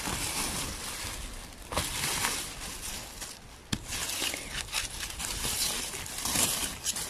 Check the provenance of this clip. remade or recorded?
recorded